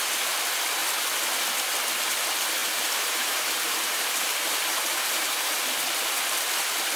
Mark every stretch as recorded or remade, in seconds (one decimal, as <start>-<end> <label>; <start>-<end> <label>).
0.0-2.6 recorded; 2.6-5.8 remade; 5.8-7.0 recorded

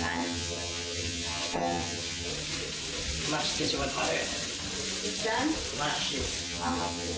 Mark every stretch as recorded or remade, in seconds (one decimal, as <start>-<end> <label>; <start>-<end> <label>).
0.0-2.3 remade; 2.3-6.4 recorded; 6.4-7.2 remade

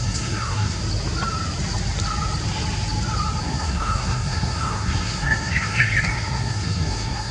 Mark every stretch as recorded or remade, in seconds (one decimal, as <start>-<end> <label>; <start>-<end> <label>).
0.0-0.8 remade; 0.8-3.4 recorded; 3.4-7.3 remade

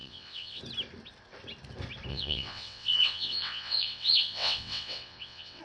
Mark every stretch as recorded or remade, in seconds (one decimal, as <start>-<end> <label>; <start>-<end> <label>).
0.0-0.6 remade; 0.6-2.1 recorded; 2.1-5.6 remade

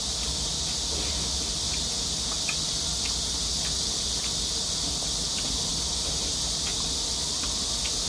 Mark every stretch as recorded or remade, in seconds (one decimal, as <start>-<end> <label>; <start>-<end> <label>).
0.0-8.1 recorded